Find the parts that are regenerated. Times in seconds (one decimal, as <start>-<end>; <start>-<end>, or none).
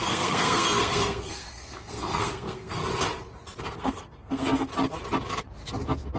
0.0-2.8; 3.6-4.7